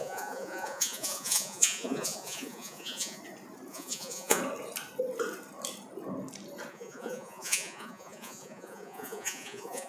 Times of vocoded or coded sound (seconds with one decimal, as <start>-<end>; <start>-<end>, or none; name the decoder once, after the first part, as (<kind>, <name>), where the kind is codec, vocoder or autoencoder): 0.0-3.2 (vocoder, Vocos); 3.7-4.4; 6.7-9.9